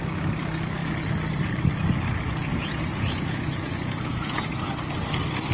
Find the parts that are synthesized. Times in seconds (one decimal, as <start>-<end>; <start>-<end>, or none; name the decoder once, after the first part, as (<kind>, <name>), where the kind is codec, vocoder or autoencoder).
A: 2.5-4.7 (vocoder, Vocos)